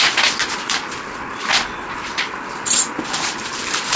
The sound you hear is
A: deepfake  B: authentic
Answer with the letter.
B